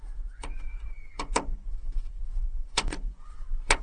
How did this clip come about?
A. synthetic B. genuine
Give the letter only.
A